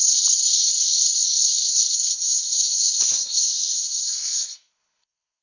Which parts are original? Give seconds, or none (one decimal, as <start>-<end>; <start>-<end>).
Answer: 0.0-2.1